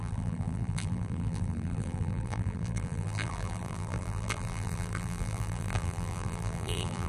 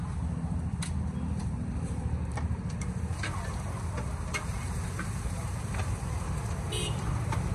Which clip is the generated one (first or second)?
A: first